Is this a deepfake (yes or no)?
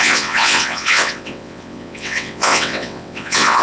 yes